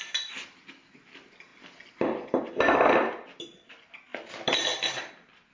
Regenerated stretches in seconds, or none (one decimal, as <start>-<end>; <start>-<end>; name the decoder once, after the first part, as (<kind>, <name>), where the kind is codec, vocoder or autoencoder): none